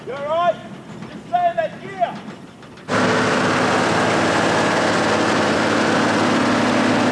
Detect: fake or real real